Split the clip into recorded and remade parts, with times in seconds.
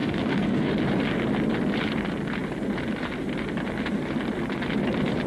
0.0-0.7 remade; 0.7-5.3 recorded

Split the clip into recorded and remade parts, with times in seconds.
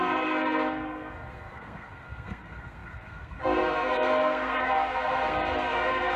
0.0-6.2 remade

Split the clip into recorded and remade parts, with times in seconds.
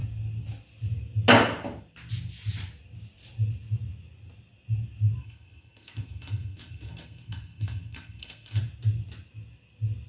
0.0-5.2 recorded; 5.2-8.6 remade; 8.6-10.1 recorded